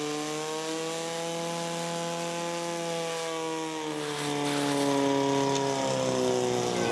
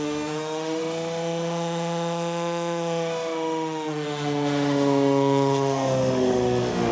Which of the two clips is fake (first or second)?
second